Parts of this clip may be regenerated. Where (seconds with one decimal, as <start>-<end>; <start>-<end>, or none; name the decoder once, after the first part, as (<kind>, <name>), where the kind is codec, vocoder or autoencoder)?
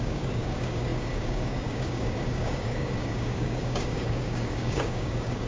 0.0-5.5 (codec, DAC)